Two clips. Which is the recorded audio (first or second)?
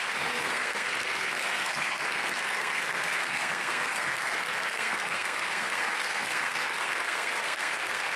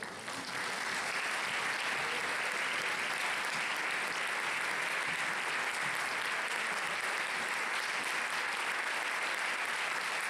second